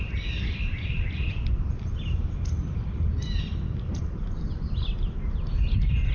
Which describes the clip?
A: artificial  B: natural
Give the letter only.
B